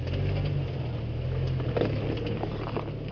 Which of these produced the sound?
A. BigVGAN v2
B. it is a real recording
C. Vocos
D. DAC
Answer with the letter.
B